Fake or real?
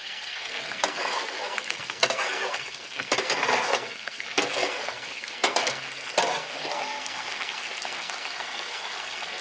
fake